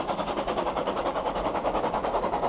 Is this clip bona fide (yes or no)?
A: no